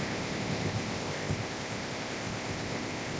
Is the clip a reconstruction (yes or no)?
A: yes